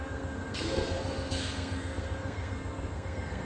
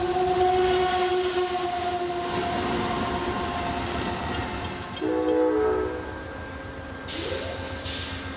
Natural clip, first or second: second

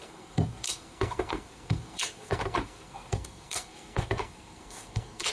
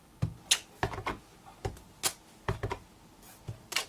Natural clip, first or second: second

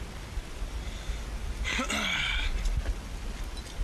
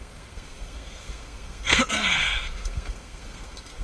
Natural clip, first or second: first